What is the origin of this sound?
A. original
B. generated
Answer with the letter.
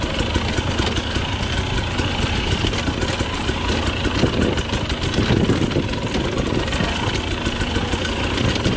A